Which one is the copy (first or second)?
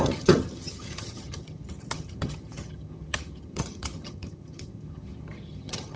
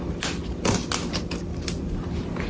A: first